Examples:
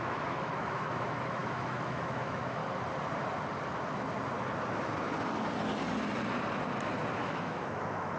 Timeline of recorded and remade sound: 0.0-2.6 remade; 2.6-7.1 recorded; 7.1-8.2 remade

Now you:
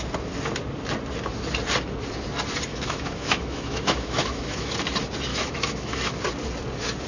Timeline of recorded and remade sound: 0.0-2.7 recorded; 2.7-4.7 remade; 4.7-5.3 recorded; 5.3-6.2 remade; 6.2-7.1 recorded

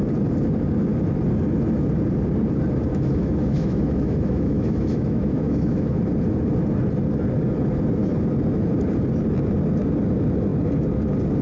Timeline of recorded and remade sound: 0.0-2.9 recorded; 2.9-6.0 remade; 6.0-11.4 recorded

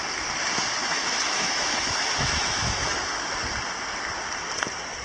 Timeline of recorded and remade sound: 0.0-0.8 recorded; 0.8-3.2 remade; 3.2-5.0 recorded

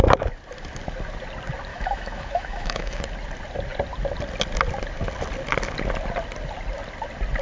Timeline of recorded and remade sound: 0.0-1.7 recorded; 1.7-3.0 remade; 3.0-7.4 recorded

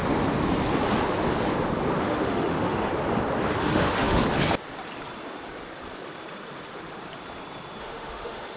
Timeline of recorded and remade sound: 0.0-2.0 recorded; 2.0-2.9 remade; 2.9-3.6 recorded; 3.6-4.2 remade; 4.2-7.8 recorded; 7.8-8.6 remade

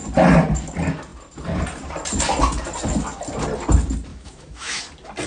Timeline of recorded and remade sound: 0.0-4.1 recorded; 4.1-4.8 remade; 4.8-5.3 recorded